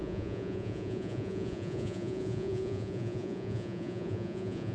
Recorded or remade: remade